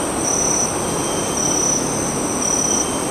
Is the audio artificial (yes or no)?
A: no